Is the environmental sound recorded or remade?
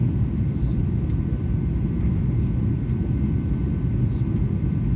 recorded